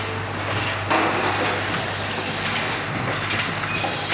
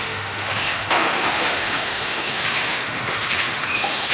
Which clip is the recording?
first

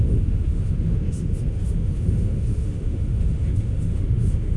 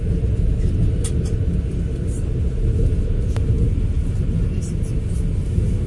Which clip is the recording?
second